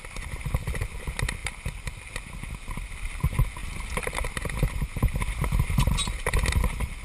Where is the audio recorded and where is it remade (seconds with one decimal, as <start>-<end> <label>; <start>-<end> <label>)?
0.0-7.0 recorded